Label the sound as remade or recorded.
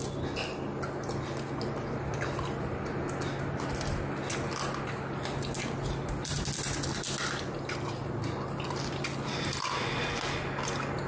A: recorded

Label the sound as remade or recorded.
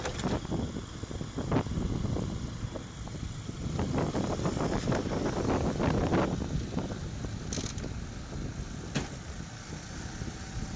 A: recorded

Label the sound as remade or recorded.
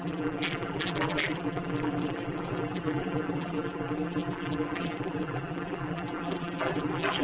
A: remade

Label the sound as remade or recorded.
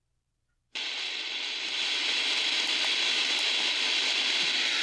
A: remade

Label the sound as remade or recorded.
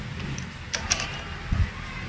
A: remade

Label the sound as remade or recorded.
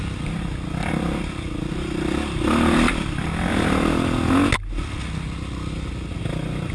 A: recorded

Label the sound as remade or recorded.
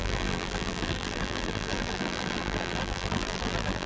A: remade